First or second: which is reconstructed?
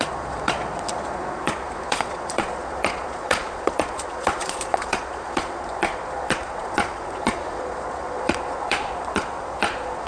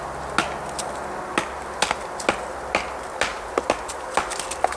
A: first